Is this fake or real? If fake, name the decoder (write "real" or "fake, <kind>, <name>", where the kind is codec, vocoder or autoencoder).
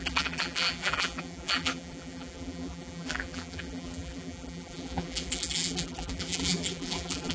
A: fake, vocoder, BigVGAN v2